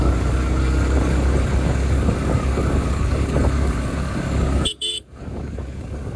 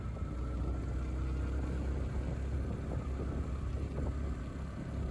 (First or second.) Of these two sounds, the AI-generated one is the first